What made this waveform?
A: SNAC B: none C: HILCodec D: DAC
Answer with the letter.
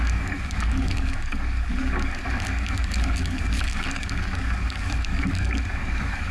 D